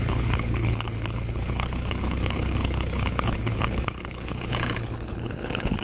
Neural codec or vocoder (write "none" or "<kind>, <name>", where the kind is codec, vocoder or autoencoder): codec, HILCodec